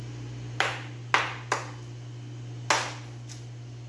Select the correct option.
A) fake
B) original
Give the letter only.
B